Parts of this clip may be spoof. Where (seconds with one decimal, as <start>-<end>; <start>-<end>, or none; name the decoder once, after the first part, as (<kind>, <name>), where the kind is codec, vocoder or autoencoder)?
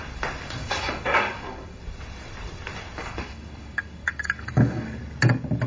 0.6-1.8 (codec, DAC); 3.0-5.0